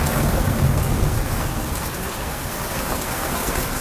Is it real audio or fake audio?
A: fake